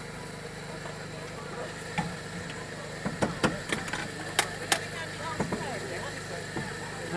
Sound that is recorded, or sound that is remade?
recorded